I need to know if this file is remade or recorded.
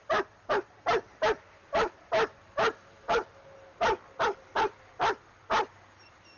recorded